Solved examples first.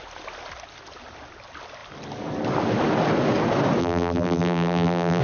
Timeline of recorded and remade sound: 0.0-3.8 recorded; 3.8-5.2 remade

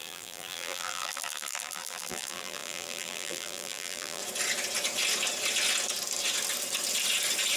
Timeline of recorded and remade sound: 0.0-4.2 remade; 4.2-7.6 recorded

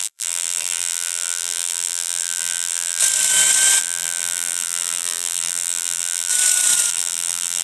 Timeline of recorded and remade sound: 0.0-3.0 remade; 3.0-3.8 recorded; 3.8-6.3 remade; 6.3-6.9 recorded; 6.9-7.6 remade

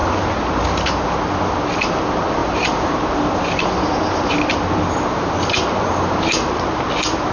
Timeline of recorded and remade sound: 0.0-0.6 remade; 0.6-2.4 recorded; 2.4-6.8 remade; 6.8-7.3 recorded

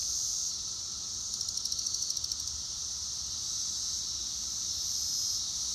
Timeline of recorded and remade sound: 0.0-3.3 remade; 3.3-4.2 recorded; 4.2-5.0 remade; 5.0-5.7 recorded

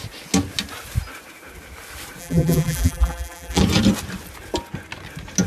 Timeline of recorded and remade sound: 0.0-2.2 recorded; 2.2-3.6 remade; 3.6-5.5 recorded

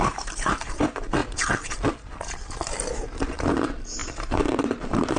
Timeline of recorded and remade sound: 0.0-1.2 remade; 1.2-3.4 recorded; 3.4-5.2 remade